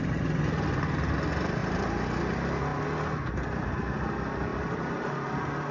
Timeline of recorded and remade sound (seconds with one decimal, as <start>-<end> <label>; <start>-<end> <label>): 0.0-1.6 recorded; 1.6-2.2 remade; 2.2-4.5 recorded; 4.5-5.1 remade; 5.1-5.7 recorded